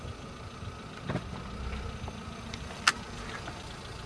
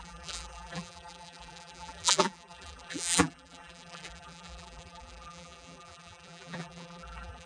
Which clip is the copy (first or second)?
second